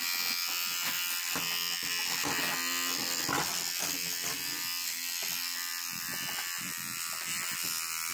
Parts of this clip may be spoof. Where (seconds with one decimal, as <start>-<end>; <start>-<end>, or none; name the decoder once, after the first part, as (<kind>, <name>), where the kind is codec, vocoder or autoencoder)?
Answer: none